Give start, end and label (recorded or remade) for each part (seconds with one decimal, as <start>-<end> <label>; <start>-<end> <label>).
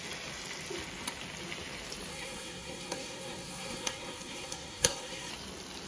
0.0-2.1 recorded; 2.1-5.3 remade; 5.3-5.9 recorded